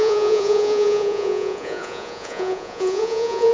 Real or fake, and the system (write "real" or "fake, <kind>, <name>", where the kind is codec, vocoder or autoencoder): fake, vocoder, Vocos